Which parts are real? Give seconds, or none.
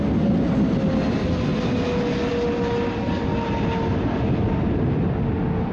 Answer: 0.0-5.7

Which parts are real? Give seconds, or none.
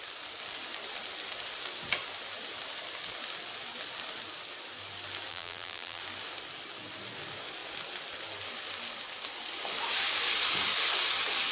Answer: 0.0-5.3; 6.0-11.5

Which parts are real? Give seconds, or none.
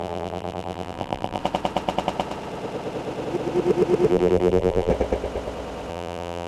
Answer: 1.4-4.1; 4.9-5.9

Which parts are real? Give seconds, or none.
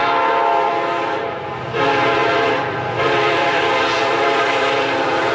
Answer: 0.7-2.2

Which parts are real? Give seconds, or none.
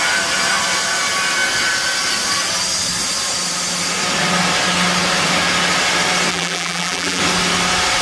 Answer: 0.0-6.3; 7.2-8.0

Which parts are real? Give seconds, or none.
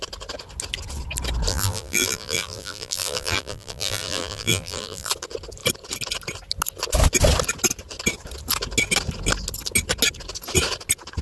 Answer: 0.0-1.5; 5.1-11.2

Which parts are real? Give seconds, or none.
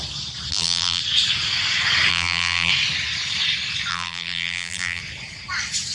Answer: 0.0-0.5; 1.0-2.1; 2.7-3.9; 5.0-5.9